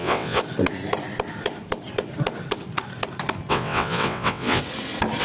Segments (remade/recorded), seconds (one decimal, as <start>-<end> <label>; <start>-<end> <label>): 0.0-0.4 remade; 0.4-3.5 recorded; 3.5-4.6 remade; 4.6-5.2 recorded